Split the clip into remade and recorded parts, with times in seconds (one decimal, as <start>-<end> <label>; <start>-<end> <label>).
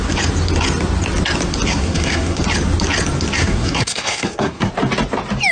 0.0-1.7 recorded; 1.7-2.4 remade; 2.4-3.4 recorded; 3.4-4.7 remade; 4.7-5.5 recorded